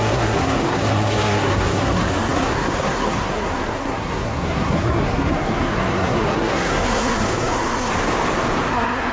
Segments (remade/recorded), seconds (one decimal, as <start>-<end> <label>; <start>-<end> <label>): 0.0-7.9 remade; 7.9-8.7 recorded; 8.7-9.1 remade